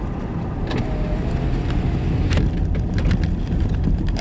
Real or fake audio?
real